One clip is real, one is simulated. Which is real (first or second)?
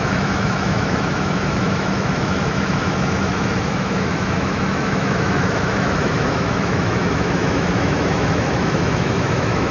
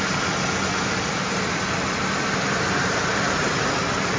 second